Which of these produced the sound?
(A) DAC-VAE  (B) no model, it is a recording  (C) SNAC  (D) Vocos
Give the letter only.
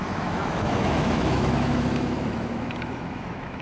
A